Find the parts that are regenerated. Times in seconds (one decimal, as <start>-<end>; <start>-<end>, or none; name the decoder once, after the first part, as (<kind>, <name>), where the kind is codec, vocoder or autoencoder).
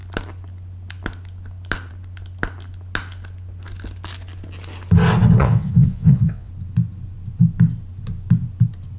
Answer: 5.4-6.5 (vocoder, WaveNeXt)